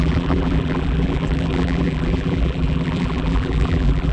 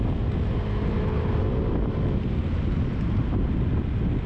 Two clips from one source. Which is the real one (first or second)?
second